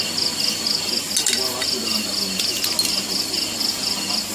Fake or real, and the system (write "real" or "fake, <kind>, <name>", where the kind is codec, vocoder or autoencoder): real